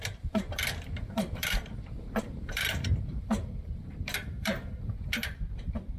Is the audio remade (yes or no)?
yes